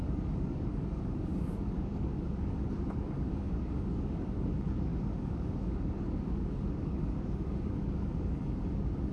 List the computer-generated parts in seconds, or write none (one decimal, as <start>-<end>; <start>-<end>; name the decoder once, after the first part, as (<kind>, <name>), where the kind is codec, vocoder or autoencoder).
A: 0.0-9.1 (codec, DAC)

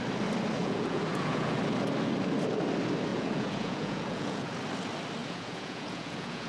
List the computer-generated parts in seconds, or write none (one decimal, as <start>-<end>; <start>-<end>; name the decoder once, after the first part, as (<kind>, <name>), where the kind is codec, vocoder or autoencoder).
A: 0.6-1.6 (vocoder, Vocos); 3.1-4.5; 5.2-6.5

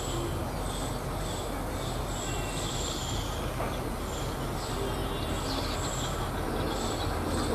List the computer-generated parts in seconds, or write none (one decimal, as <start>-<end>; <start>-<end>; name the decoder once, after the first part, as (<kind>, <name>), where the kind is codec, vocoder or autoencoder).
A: none

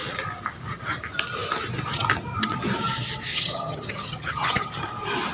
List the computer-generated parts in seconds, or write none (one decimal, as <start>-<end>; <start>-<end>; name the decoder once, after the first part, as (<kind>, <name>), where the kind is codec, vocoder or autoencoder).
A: 3.3-4.7 (vocoder, HiFi-GAN)

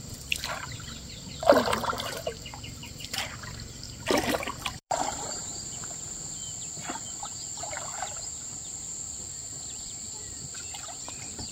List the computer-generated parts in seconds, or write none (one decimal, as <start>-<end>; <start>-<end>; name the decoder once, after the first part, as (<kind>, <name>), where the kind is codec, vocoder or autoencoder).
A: 0.0-11.5 (vocoder, BigVGAN v2)

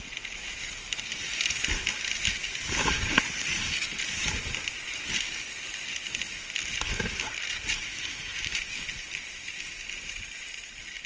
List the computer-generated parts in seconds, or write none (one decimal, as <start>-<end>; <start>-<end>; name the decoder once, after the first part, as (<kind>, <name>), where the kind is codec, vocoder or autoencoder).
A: none

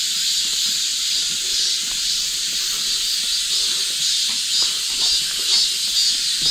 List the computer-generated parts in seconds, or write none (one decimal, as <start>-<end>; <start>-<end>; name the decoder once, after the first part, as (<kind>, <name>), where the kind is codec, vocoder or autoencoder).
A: 0.9-3.5 (vocoder, BigVGAN v2)